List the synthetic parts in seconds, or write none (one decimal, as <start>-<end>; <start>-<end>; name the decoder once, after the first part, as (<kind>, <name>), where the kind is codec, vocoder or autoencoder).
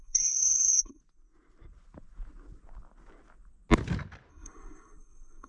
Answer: 0.0-1.0 (codec, SNAC); 4.3-5.5